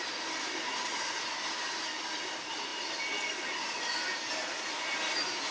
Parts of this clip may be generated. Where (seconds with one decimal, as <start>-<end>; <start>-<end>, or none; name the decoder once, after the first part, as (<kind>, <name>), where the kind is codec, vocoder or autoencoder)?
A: none